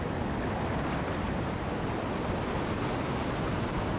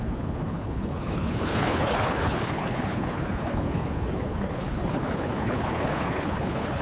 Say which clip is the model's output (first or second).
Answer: second